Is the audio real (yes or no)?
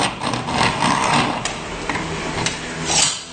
yes